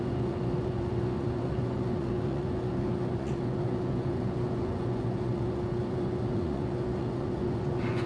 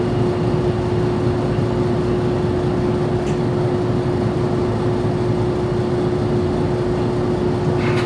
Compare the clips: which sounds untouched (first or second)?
second